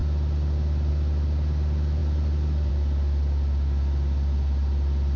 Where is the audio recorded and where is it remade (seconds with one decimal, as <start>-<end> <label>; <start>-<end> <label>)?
0.0-5.2 recorded